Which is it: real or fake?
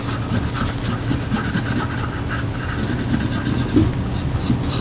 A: real